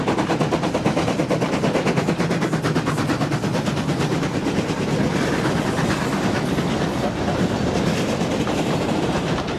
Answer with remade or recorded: recorded